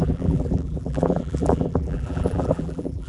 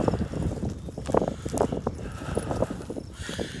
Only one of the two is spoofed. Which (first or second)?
first